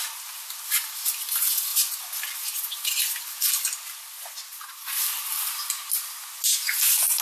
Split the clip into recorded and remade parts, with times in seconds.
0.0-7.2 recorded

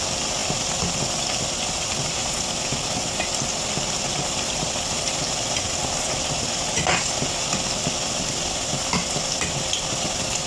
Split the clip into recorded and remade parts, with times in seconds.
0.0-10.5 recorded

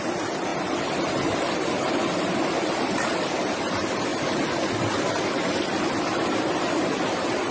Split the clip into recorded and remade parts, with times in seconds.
0.0-7.5 recorded